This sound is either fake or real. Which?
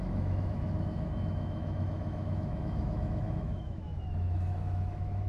fake